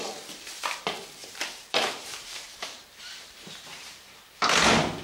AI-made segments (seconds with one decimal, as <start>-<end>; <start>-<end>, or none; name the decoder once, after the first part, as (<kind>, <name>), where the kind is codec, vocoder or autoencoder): 1.2-4.2 (vocoder, BigVGAN v2)